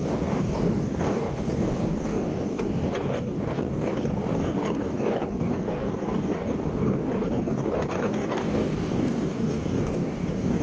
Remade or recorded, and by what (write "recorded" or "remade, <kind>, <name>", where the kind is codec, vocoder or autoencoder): remade, codec, DAC